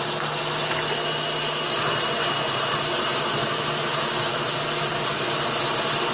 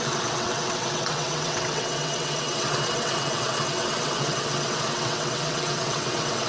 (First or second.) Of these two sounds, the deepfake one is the second